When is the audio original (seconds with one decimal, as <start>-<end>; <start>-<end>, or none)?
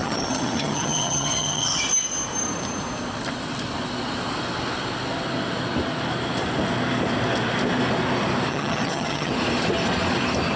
1.8-8.5; 9.3-10.6